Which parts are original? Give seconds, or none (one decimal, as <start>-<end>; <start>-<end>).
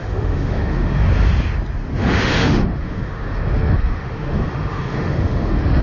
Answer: 1.1-2.0